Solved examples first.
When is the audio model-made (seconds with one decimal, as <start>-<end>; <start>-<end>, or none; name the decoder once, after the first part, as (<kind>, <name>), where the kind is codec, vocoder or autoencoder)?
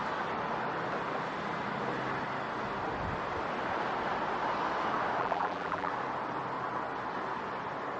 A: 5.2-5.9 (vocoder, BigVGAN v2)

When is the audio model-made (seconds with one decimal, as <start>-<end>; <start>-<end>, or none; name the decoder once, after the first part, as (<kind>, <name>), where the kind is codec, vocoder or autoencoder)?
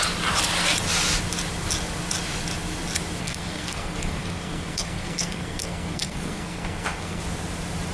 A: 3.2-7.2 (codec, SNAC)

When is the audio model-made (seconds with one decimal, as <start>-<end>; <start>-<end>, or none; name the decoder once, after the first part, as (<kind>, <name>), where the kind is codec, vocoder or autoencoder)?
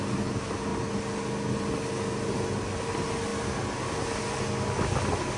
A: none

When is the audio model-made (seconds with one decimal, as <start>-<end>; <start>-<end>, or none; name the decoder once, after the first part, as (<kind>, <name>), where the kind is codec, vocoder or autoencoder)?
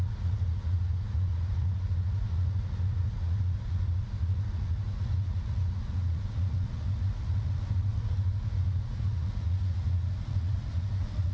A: 0.0-11.3 (vocoder, Vocos)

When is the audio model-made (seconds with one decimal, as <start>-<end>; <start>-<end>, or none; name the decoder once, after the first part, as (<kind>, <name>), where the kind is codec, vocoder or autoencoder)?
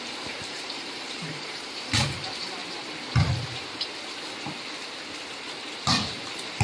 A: 0.0-2.6 (vocoder, BigVGAN v2); 6.0-6.6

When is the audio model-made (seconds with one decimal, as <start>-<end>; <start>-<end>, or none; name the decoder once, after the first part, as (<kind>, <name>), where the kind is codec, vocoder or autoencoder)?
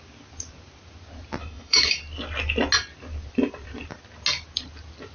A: 1.4-2.0 (autoencoder, DAC-VAE)